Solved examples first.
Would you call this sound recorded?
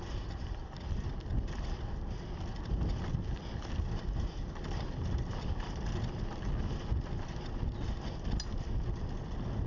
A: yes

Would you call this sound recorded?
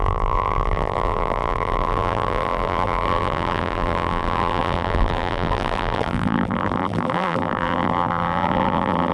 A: no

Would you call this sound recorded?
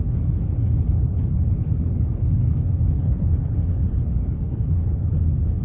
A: no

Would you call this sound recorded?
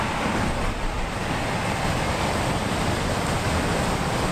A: no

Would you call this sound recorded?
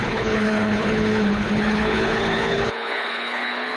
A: no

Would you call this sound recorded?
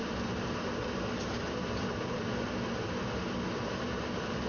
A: no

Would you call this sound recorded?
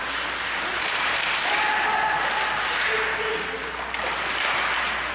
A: yes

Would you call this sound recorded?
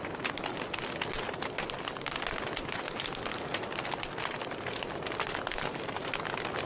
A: yes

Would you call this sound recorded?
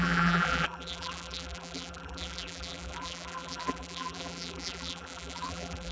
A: no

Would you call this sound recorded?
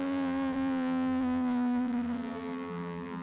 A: no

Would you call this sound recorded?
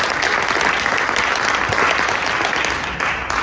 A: yes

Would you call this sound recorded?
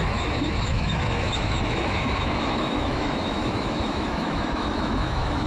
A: no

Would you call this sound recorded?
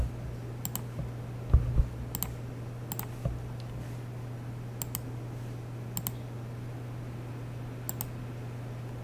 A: yes